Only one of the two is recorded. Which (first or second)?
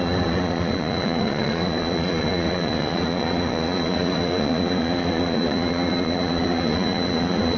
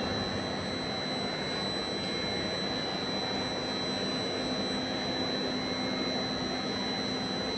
second